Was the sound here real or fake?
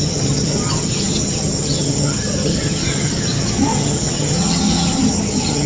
fake